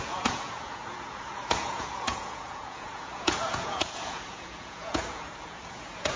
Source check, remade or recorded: remade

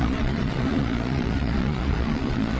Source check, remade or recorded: remade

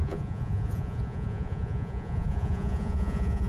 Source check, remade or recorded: remade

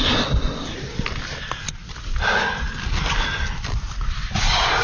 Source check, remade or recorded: recorded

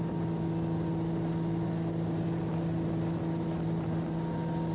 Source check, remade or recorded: recorded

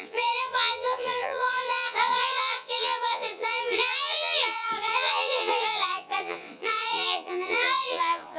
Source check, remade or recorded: remade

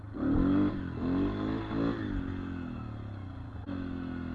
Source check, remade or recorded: recorded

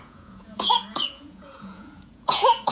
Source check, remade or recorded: remade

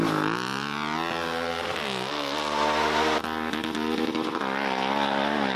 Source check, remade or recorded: recorded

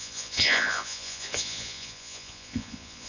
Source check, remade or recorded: remade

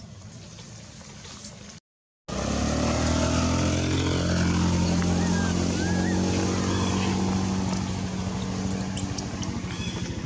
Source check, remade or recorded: recorded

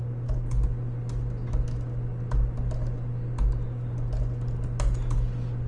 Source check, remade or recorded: recorded